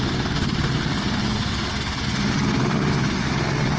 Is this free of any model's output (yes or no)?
yes